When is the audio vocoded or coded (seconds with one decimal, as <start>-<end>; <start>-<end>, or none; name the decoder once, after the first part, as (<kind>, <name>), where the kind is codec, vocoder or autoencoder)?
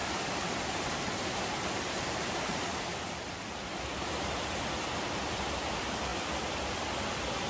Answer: 1.1-4.7 (vocoder, BigVGAN v2)